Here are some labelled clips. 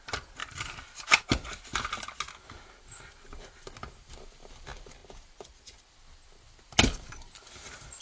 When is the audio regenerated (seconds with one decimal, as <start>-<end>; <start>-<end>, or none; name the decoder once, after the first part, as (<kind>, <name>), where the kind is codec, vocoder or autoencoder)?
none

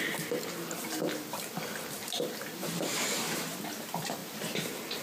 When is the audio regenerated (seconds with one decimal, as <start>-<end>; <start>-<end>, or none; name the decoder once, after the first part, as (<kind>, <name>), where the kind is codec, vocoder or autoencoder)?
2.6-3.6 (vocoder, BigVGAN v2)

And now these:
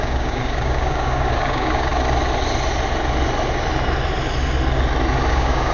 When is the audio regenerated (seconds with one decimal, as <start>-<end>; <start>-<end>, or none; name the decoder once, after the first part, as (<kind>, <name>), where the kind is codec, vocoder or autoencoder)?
0.0-1.9 (codec, DAC); 5.3-5.7

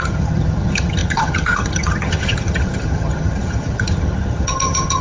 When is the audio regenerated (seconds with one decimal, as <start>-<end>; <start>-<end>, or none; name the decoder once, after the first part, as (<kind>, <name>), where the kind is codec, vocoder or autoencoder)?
0.0-5.0 (vocoder, HiFi-GAN)

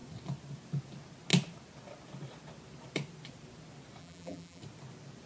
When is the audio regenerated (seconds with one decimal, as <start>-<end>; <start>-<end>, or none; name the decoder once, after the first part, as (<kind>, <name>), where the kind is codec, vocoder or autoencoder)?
4.0-4.6 (vocoder, BigVGAN v2)

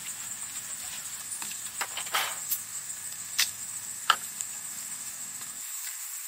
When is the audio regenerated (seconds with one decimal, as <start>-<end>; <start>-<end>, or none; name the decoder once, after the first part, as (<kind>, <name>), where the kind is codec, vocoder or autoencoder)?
1.2-1.6 (codec, DAC); 2.4-6.3